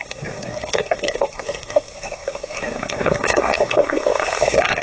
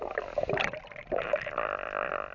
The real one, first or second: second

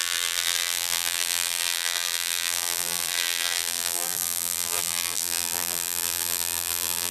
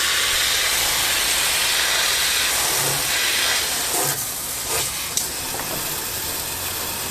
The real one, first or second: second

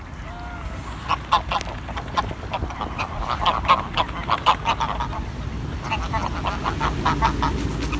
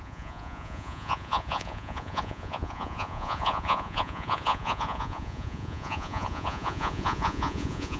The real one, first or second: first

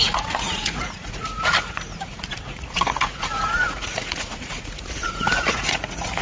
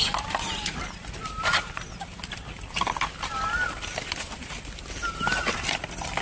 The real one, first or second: second